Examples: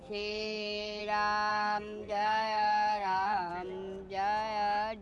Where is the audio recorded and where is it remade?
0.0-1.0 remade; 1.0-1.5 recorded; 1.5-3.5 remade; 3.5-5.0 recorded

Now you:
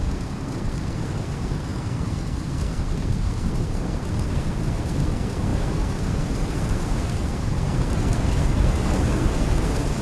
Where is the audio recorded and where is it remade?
0.0-10.0 remade

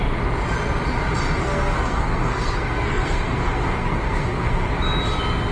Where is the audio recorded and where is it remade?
0.0-1.4 recorded; 1.4-4.7 remade; 4.7-5.5 recorded

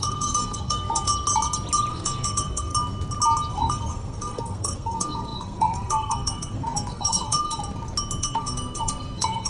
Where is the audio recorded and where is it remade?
0.0-1.1 remade; 1.1-1.9 recorded; 1.9-2.7 remade; 2.7-3.5 recorded; 3.5-7.6 remade; 7.6-8.2 recorded; 8.2-9.5 remade

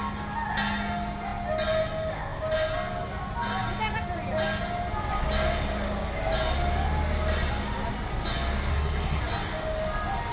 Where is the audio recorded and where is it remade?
0.0-8.7 recorded; 8.7-9.2 remade; 9.2-10.3 recorded